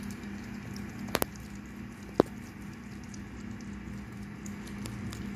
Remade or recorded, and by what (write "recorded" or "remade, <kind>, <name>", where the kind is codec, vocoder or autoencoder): recorded